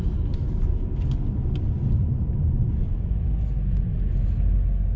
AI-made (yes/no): no